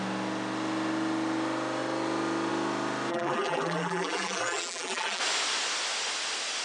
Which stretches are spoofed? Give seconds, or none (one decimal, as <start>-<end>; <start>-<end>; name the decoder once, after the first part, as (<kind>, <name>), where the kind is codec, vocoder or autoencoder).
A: 3.1-5.2 (vocoder, BigVGAN v2)